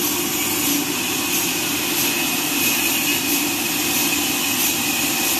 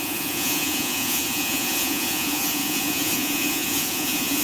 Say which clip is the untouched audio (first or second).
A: first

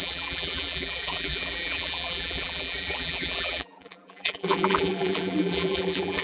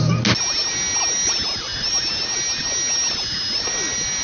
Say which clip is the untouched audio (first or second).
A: second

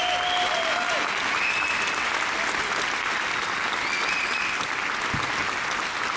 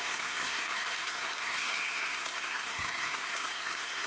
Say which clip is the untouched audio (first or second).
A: first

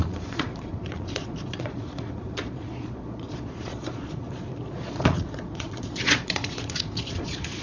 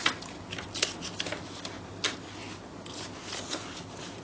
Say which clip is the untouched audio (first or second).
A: second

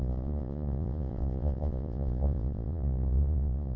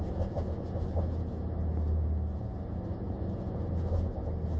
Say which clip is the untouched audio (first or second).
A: second